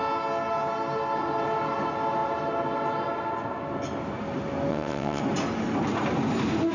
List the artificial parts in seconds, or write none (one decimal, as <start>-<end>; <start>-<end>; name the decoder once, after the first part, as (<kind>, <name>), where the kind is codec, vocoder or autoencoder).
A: 4.7-5.2 (vocoder, WaveNeXt)